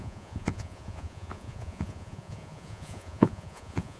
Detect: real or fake fake